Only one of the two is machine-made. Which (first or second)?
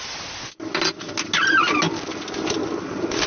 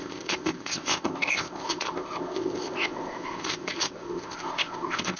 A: second